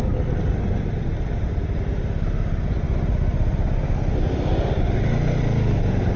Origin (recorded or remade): recorded